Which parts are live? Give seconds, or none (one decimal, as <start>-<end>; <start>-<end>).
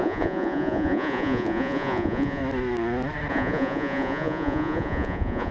2.4-3.3